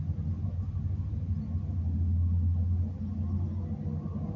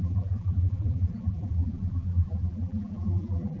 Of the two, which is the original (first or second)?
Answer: first